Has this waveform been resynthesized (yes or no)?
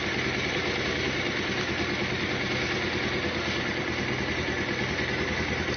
no